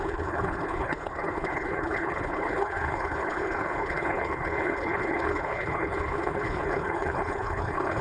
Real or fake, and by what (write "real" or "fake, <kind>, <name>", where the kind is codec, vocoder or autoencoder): fake, codec, HILCodec